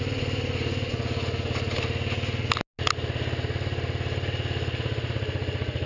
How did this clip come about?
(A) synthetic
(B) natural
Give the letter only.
B